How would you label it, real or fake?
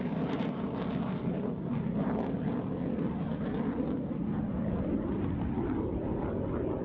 real